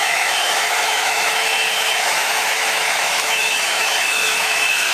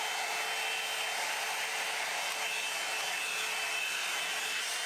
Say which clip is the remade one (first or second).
first